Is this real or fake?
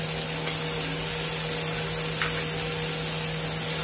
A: real